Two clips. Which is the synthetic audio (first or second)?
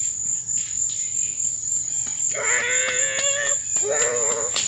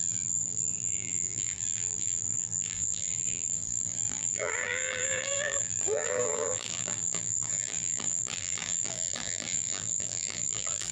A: second